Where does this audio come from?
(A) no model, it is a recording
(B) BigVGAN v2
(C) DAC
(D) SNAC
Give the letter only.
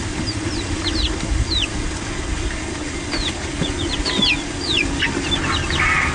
A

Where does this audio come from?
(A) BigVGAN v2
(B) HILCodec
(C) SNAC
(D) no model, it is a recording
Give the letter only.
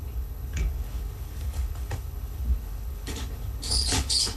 B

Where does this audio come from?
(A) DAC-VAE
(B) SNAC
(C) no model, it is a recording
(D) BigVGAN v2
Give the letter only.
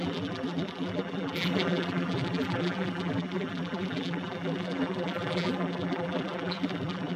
D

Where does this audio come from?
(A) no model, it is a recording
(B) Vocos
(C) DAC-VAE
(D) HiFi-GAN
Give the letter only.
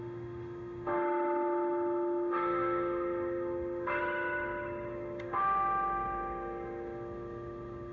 C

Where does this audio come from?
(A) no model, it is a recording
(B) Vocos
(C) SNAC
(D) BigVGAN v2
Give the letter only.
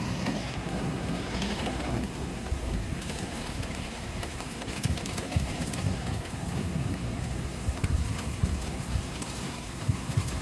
C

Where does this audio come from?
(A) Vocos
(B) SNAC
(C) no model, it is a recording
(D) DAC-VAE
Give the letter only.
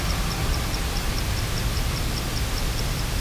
C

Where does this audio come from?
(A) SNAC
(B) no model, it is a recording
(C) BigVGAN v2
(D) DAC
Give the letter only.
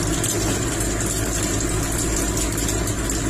B